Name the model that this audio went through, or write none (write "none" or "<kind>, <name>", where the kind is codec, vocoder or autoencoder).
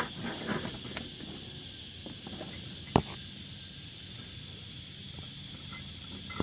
none